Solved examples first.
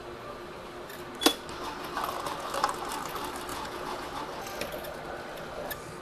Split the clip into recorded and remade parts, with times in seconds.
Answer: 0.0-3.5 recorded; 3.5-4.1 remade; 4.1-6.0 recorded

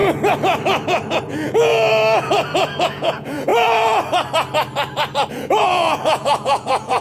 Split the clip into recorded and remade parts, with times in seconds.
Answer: 0.0-1.2 recorded; 1.2-1.7 remade; 1.7-2.2 recorded; 2.2-3.5 remade; 3.5-5.3 recorded; 5.3-7.0 remade

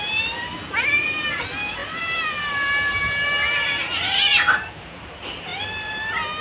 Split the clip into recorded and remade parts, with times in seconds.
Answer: 0.0-6.4 recorded

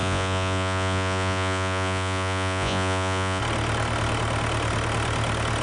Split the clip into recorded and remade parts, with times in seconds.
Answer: 0.0-3.4 remade; 3.4-5.6 recorded